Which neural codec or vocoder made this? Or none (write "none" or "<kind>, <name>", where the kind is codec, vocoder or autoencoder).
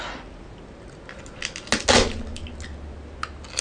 none